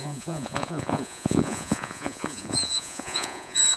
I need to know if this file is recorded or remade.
remade